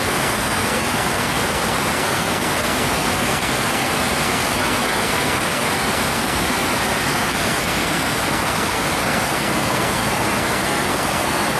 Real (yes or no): no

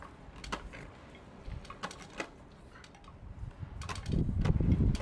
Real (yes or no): yes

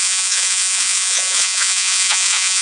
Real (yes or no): no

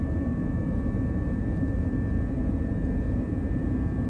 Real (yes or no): no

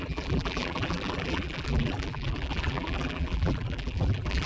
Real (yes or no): no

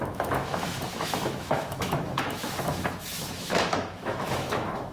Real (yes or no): no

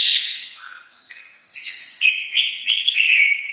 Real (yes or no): no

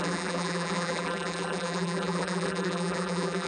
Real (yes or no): no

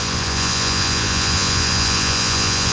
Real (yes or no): no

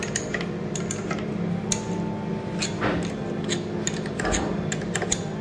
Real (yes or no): yes